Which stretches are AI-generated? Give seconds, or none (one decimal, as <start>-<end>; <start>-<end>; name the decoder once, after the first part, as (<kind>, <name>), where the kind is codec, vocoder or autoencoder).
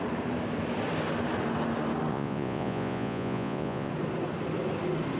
2.1-3.9 (vocoder, Vocos)